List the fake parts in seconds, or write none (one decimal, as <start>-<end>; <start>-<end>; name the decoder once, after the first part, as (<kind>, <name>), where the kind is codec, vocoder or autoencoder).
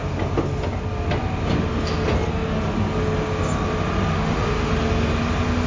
4.1-4.7 (autoencoder, DAC-VAE)